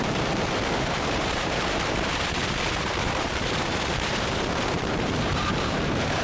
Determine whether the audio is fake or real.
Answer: fake